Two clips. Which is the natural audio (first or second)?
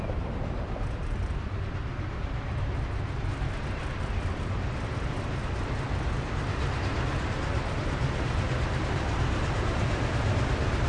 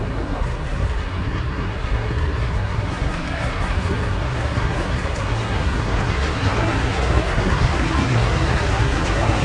first